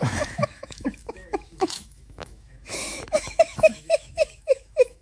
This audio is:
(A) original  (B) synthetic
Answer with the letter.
B